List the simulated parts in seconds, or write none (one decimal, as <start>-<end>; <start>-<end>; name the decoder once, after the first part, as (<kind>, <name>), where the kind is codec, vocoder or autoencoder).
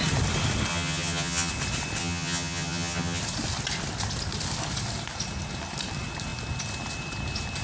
0.7-1.5 (vocoder, HiFi-GAN); 2.0-3.2